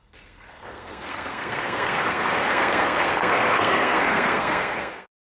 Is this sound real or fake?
fake